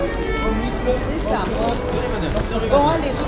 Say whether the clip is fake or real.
real